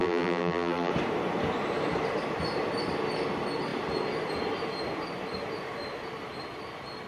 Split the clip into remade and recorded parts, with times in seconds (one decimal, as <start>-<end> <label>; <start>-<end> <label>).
0.0-0.9 remade; 0.9-7.1 recorded